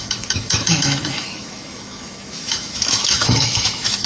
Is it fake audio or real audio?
fake